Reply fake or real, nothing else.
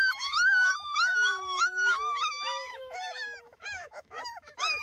fake